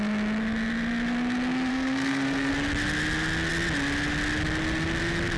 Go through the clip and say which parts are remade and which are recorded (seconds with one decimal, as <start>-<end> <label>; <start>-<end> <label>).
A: 0.0-1.7 recorded; 1.7-2.5 remade; 2.5-5.4 recorded

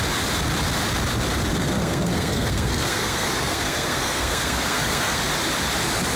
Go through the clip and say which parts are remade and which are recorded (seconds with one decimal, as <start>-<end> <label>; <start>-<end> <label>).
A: 0.0-1.5 recorded; 1.5-5.2 remade; 5.2-6.2 recorded

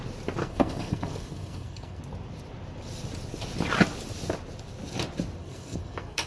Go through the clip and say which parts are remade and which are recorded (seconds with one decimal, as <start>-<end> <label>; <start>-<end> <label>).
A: 0.0-0.4 recorded; 0.4-2.0 remade; 2.0-5.4 recorded; 5.4-6.3 remade

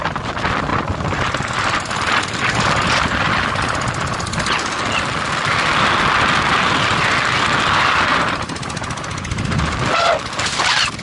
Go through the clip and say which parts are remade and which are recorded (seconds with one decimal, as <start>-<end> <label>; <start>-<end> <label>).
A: 0.0-11.0 recorded

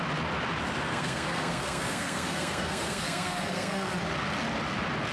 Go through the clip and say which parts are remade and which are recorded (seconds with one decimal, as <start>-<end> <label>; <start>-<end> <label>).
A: 0.0-0.9 recorded; 0.9-3.9 remade; 3.9-5.1 recorded